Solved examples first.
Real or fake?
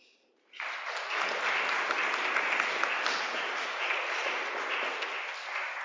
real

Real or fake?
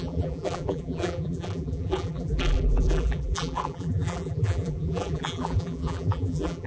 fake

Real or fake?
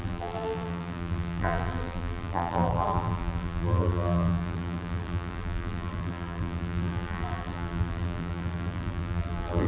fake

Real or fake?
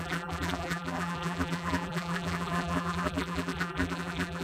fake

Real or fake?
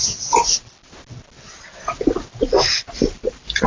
real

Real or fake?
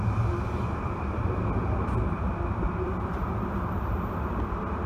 fake